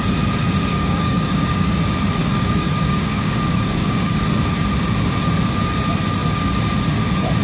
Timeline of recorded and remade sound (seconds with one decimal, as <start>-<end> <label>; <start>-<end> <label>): 0.0-0.7 recorded; 0.7-1.8 remade; 1.8-2.2 recorded; 2.2-4.3 remade; 4.3-7.4 recorded